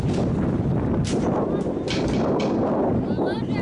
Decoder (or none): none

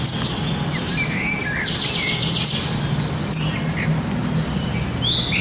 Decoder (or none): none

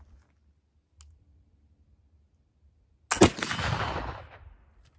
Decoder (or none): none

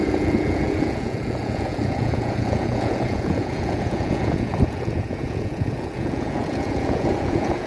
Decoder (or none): vocoder, Vocos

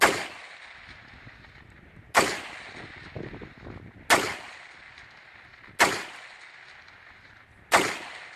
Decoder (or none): none